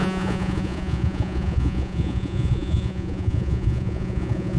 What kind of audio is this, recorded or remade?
remade